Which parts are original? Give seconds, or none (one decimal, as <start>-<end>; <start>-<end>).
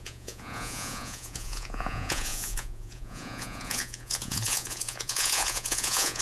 none